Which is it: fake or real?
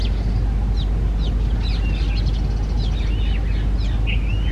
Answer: real